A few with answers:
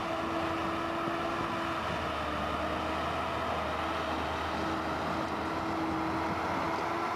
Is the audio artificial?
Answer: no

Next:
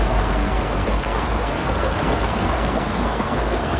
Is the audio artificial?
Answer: yes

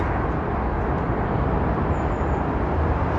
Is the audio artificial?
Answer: no